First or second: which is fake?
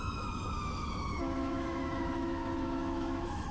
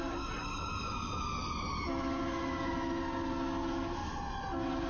first